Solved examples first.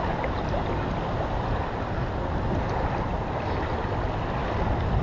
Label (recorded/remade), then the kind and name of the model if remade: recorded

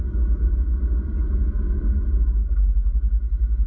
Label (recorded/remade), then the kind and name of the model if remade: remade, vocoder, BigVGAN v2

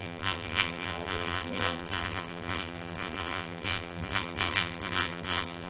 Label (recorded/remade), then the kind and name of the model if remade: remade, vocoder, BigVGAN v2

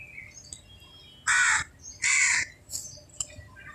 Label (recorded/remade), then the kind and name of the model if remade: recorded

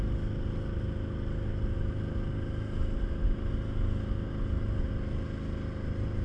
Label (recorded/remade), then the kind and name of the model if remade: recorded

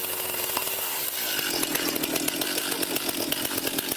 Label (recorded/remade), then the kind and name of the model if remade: recorded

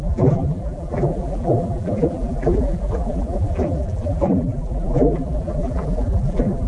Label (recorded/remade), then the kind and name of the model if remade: remade, vocoder, BigVGAN v2